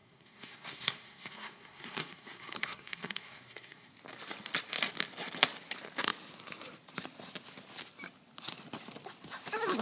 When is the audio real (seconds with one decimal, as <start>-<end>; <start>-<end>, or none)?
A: 3.9-9.8